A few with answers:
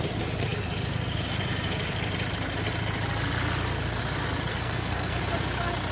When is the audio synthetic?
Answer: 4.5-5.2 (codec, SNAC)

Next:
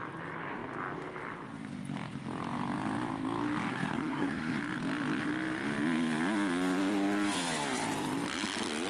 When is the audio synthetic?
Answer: 3.7-4.6 (codec, SNAC)

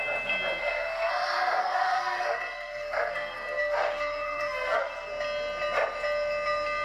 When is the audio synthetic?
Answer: 0.6-1.1 (codec, SNAC); 1.6-5.1

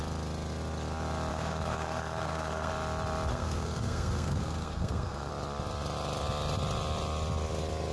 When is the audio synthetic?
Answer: 1.3-2.7 (codec, SNAC); 3.3-5.3

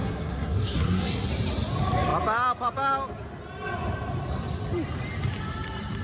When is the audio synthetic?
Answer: 0.0-1.3 (codec, SNAC)

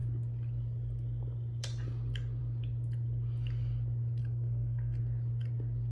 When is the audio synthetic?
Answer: 4.2-5.0 (codec, SNAC)

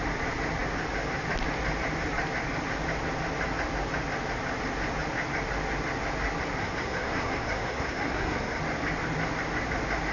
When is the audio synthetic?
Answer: 6.6-8.6 (codec, SNAC)

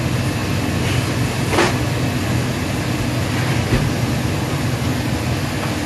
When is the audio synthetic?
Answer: none